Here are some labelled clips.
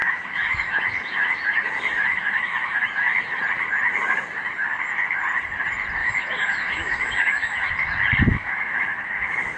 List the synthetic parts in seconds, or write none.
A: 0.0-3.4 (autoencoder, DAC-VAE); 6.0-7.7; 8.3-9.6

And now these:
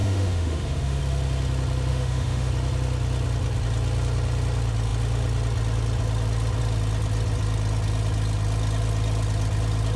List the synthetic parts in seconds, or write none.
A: 0.0-1.0 (autoencoder, DAC-VAE); 1.9-2.5

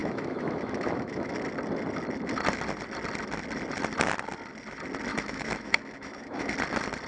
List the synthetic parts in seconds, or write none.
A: 0.0-1.3 (autoencoder, DAC-VAE); 5.1-6.5

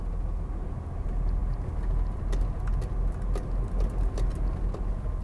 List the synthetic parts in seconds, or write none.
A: none

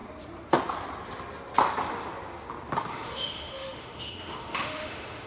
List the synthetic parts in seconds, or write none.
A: 2.9-5.3 (autoencoder, DAC-VAE)

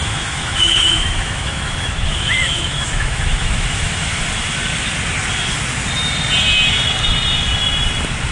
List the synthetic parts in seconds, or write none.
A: 0.0-4.2 (autoencoder, DAC-VAE)